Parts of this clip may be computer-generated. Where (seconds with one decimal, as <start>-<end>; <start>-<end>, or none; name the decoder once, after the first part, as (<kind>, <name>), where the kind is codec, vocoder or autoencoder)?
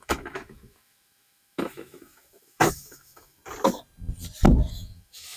0.0-3.4 (autoencoder, DAC-VAE); 4.7-5.4